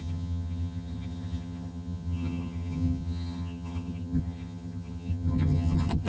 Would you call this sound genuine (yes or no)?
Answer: no